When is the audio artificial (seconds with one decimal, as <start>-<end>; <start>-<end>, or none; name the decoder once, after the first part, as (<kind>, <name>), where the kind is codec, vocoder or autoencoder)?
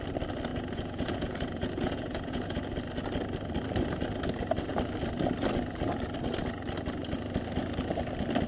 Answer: 0.5-2.6 (vocoder, Vocos)